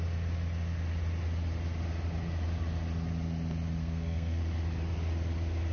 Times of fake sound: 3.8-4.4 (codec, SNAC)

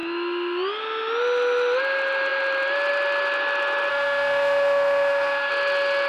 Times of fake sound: 3.9-5.5 (autoencoder, DAC-VAE)

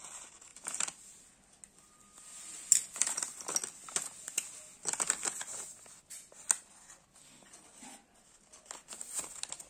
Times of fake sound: none

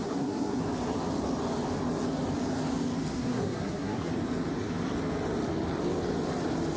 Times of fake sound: 0.0-0.6 (codec, SNAC); 3.1-4.1

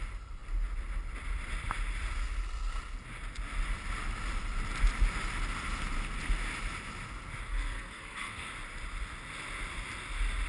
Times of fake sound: 7.5-8.5 (codec, SNAC)

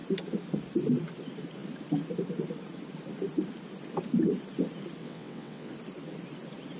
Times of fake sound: 5.0-5.7 (vocoder, WaveNeXt)